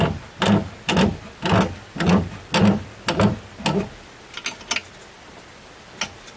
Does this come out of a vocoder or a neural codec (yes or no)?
no